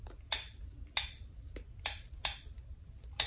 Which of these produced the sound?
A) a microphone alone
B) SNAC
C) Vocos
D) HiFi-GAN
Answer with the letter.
A